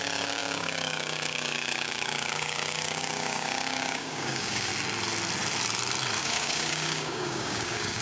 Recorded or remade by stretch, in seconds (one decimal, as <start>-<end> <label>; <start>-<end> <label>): 0.0-4.7 remade; 4.7-6.2 recorded; 6.2-8.0 remade